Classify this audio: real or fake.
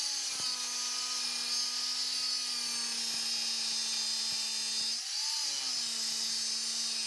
real